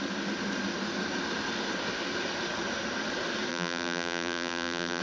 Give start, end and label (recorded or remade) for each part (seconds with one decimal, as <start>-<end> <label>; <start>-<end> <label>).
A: 0.0-3.5 recorded; 3.5-5.0 remade